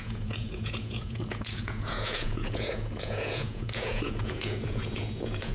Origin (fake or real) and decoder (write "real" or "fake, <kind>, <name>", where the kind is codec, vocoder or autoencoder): fake, vocoder, Vocos